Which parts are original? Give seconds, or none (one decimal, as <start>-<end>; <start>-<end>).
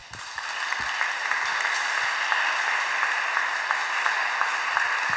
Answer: 1.1-1.5; 3.4-5.2